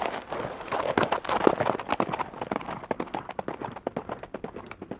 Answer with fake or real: real